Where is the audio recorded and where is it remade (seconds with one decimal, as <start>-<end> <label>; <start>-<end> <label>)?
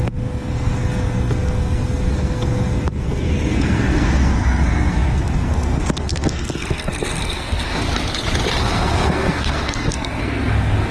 0.0-7.9 remade; 7.9-8.6 recorded; 8.6-10.9 remade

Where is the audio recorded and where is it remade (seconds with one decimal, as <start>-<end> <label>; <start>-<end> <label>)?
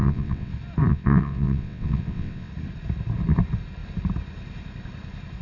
0.0-0.5 remade; 0.5-0.9 recorded; 0.9-2.5 remade; 2.5-5.4 recorded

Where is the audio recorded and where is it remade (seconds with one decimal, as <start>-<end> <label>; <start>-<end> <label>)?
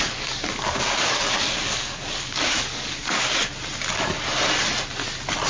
0.0-3.3 remade; 3.3-5.5 recorded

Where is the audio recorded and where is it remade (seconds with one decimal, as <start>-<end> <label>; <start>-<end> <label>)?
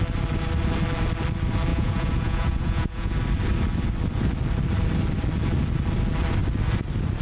0.0-1.7 recorded; 1.7-3.1 remade; 3.1-7.2 recorded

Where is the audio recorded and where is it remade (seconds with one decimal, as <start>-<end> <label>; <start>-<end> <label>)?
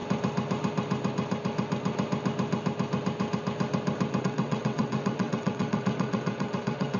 0.0-4.2 recorded; 4.2-7.0 remade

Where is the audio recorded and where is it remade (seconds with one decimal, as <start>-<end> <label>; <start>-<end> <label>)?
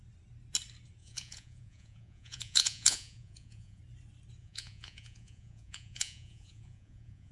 0.0-1.0 recorded; 1.0-3.8 remade; 3.8-4.4 recorded; 4.4-7.3 remade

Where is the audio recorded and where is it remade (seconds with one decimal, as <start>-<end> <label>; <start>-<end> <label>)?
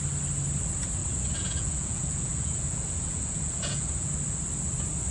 0.0-1.0 recorded; 1.0-4.1 remade; 4.1-5.1 recorded